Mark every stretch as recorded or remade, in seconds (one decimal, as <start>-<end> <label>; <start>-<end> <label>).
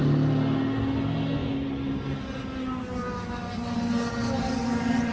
0.0-5.1 recorded